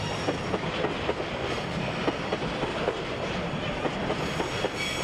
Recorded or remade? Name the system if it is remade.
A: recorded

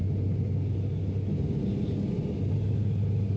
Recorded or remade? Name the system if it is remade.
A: recorded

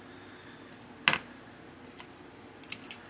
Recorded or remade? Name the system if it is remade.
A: recorded